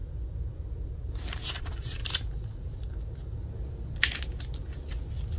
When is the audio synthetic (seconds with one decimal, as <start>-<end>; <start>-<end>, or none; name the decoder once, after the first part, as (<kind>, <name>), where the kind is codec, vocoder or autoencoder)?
1.6-2.0 (vocoder, Vocos)